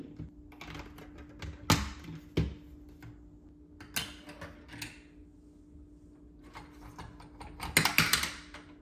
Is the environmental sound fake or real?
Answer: real